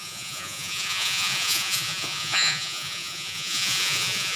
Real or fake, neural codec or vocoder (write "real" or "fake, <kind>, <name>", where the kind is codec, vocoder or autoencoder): fake, vocoder, Vocos